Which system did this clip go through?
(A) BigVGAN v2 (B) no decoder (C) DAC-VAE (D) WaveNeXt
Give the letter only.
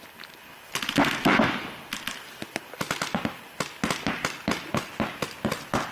B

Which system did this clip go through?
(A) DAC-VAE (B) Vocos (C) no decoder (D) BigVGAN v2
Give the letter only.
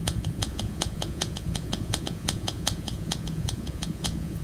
B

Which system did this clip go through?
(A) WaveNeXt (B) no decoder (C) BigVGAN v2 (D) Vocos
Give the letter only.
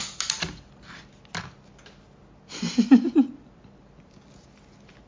B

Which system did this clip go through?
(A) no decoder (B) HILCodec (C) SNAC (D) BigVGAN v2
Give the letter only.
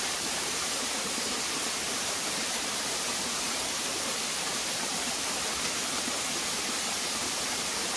D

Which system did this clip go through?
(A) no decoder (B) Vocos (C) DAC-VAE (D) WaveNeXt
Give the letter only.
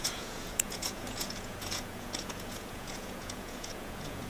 B